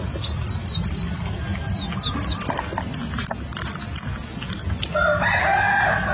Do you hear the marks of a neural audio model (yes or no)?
no